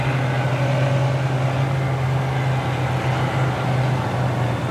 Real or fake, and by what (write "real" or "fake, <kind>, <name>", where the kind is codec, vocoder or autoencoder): real